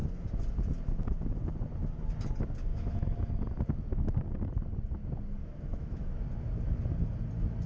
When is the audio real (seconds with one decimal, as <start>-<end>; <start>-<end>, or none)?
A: 0.0-2.7; 3.2-5.4; 6.1-7.7